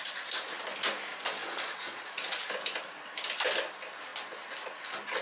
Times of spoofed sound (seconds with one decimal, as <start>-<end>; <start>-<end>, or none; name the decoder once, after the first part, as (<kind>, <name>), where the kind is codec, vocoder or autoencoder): 1.1-2.5 (vocoder, Vocos)